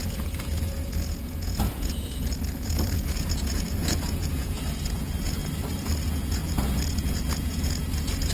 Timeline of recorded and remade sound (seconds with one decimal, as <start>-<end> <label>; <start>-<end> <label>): 0.0-5.4 remade; 5.4-6.0 recorded; 6.0-6.4 remade; 6.4-6.9 recorded; 6.9-8.3 remade

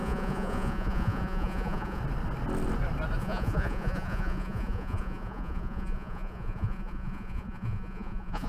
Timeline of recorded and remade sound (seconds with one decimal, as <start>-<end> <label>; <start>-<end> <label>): 0.0-2.0 remade; 2.0-3.2 recorded; 3.2-8.5 remade